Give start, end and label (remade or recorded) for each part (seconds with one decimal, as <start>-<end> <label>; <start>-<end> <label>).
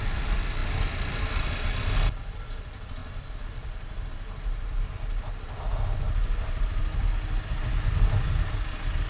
0.0-9.1 recorded